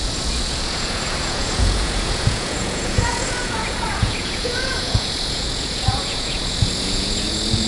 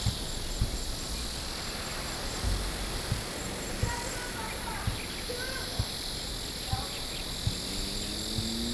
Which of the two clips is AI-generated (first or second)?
first